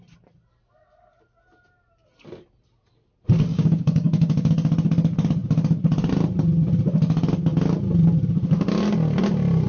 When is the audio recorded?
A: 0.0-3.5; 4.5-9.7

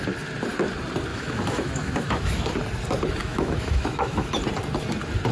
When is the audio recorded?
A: 0.0-1.1; 2.5-3.2; 4.3-5.3

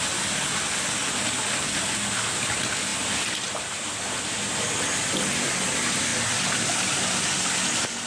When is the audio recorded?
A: 0.0-6.1; 6.7-8.1